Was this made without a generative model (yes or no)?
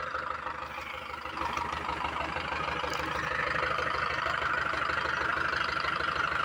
no